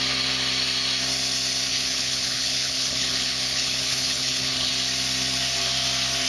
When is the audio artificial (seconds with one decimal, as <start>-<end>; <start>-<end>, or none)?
1.7-4.7